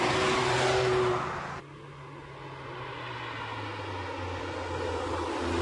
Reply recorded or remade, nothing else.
recorded